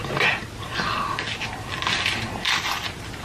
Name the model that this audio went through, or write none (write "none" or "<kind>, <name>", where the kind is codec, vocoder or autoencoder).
none